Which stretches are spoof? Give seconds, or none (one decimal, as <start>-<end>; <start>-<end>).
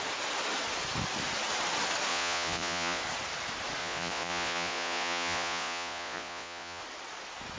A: 2.1-3.0; 3.8-6.8